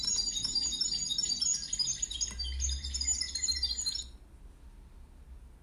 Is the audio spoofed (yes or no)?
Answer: no